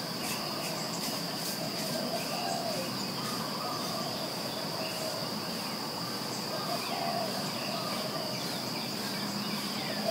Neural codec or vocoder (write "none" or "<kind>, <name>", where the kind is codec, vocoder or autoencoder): none